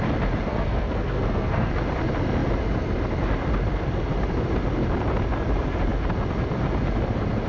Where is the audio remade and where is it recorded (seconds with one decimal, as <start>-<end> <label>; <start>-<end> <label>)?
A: 0.0-0.5 recorded; 0.5-1.7 remade; 1.7-7.5 recorded